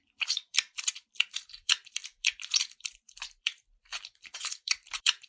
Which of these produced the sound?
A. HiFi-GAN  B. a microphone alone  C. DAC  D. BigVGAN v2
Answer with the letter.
D